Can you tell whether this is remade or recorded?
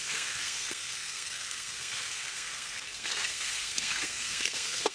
remade